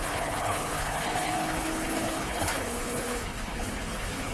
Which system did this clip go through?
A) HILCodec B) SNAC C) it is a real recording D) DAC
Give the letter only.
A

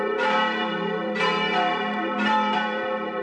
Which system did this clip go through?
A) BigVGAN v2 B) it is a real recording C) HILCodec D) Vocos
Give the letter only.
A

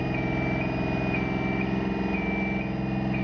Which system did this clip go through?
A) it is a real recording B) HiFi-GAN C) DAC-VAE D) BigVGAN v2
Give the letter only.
A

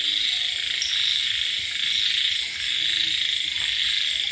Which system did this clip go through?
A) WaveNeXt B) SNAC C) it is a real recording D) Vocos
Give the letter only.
C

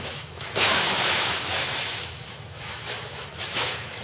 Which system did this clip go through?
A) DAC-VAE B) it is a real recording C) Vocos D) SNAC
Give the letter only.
A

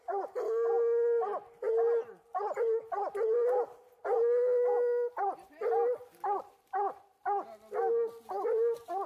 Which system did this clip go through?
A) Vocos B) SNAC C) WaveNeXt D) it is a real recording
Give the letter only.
D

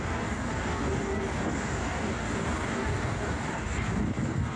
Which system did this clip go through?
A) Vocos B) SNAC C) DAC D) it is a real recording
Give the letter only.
C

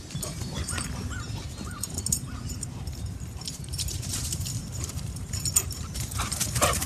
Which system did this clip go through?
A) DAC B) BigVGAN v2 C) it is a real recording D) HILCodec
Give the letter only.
B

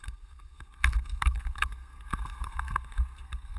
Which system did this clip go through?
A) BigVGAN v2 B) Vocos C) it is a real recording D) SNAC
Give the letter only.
D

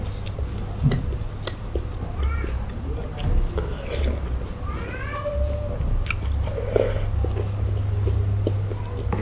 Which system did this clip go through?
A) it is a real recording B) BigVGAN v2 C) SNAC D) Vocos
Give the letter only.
A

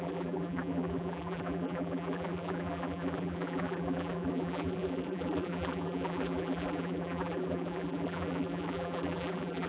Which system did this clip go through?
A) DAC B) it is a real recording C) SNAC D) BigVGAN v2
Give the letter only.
D